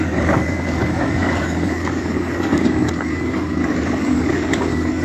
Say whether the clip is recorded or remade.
remade